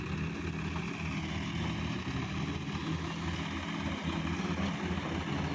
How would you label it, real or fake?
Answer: real